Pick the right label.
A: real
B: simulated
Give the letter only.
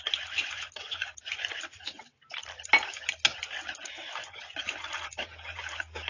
A